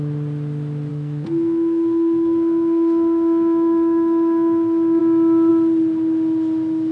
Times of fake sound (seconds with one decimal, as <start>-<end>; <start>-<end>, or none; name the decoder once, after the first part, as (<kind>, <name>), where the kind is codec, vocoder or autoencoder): 0.9-5.0 (codec, SNAC)